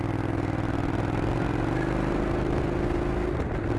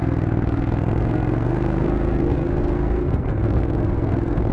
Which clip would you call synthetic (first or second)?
second